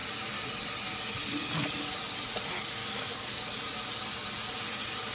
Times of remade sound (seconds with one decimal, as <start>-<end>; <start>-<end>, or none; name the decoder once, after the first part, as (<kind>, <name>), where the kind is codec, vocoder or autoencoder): 2.8-3.6 (codec, DAC)